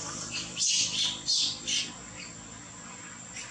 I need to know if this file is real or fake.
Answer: real